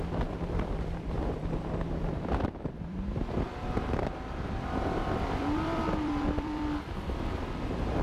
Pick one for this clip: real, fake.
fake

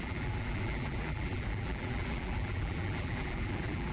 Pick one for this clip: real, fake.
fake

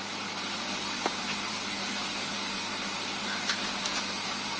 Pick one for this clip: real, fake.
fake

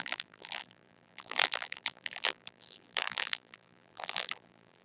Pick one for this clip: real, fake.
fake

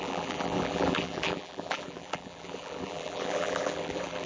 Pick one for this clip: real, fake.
fake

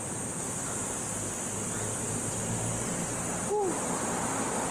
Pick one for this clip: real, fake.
fake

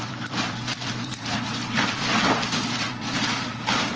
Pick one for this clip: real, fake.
fake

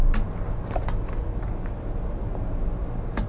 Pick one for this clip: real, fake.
real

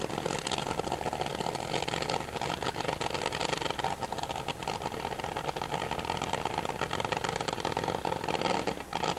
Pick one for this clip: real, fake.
real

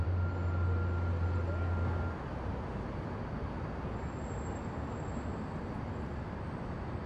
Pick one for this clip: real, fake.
real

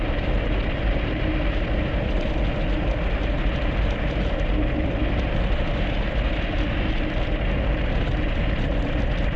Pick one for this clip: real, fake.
real